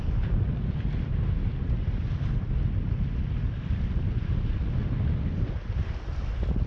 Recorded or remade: recorded